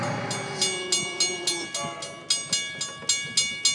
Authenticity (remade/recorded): recorded